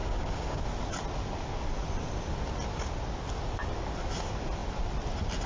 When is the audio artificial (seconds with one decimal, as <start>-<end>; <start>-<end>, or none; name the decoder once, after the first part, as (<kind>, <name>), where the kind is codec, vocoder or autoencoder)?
0.0-0.6 (codec, DAC)